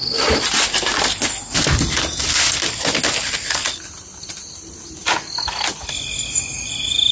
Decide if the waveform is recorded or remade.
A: recorded